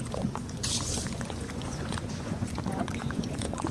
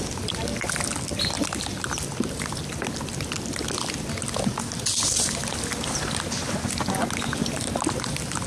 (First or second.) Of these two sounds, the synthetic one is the first